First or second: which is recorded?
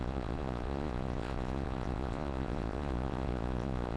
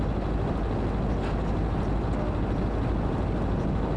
second